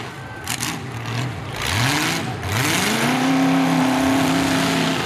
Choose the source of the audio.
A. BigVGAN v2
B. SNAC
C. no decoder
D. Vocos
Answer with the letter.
C